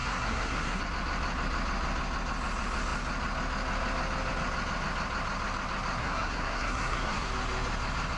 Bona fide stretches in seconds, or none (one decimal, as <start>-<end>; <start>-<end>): 0.8-6.0; 7.3-8.2